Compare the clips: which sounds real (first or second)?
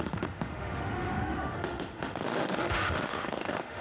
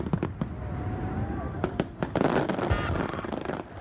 second